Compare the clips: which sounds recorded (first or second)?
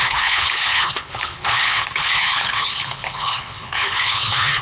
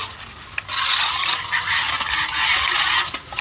second